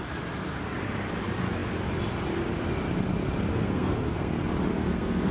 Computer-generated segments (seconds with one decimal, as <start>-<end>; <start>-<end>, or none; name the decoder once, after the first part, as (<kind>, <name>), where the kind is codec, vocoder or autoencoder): 3.5-4.3 (codec, SNAC); 4.7-5.3